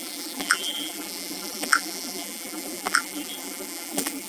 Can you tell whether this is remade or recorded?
remade